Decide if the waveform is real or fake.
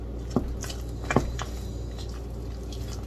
real